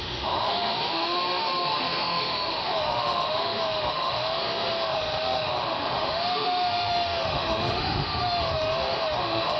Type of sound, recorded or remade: remade